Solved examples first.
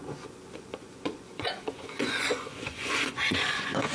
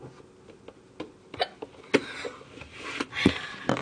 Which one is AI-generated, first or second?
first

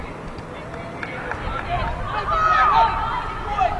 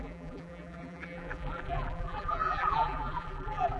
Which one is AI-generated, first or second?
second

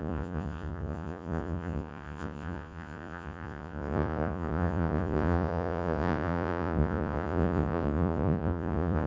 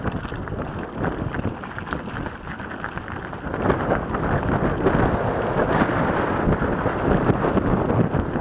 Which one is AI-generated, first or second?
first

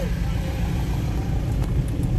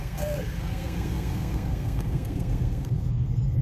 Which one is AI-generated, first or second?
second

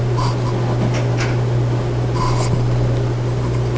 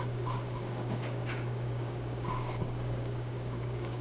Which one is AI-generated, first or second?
second